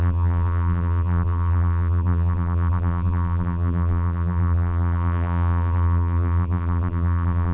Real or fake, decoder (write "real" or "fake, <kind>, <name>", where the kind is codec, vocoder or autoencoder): fake, vocoder, BigVGAN v2